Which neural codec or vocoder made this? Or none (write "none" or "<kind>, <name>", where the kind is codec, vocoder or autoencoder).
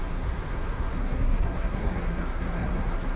codec, SNAC